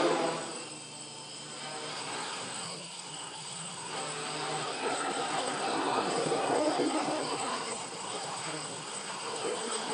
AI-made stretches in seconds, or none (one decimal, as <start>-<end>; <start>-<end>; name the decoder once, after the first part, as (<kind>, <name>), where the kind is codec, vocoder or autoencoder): 1.9-4.0 (codec, SNAC); 4.6-9.9